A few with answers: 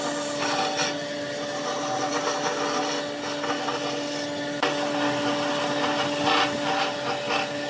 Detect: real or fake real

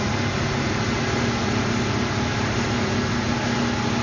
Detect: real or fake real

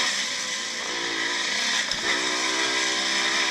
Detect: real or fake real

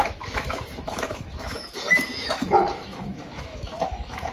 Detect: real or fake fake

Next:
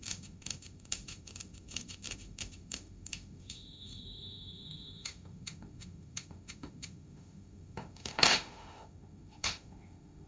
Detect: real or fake fake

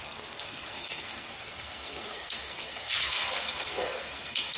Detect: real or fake fake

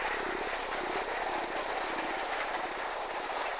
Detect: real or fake real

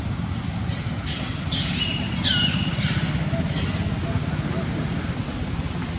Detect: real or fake real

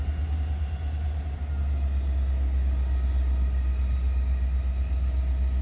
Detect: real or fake real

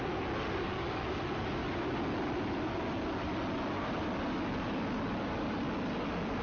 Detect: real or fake real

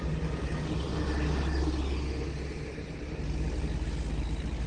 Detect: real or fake real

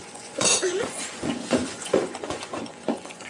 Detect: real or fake fake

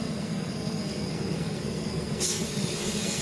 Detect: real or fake fake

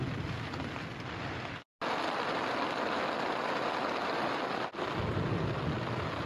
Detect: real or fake real